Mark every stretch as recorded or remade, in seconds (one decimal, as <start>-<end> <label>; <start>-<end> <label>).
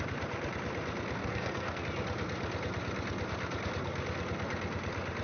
0.0-1.2 recorded; 1.2-1.8 remade; 1.8-5.2 recorded